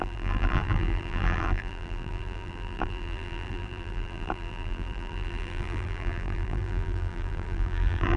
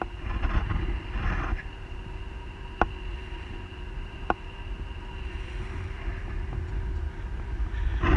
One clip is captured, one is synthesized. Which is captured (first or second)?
second